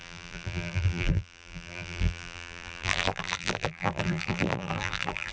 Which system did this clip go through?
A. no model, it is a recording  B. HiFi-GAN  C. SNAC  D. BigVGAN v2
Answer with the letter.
D